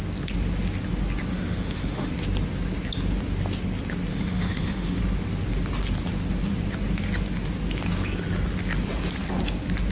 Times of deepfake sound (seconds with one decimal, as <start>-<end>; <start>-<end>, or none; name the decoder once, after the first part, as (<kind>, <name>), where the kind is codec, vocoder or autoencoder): 1.3-2.1 (autoencoder, DAC-VAE); 4.1-5.0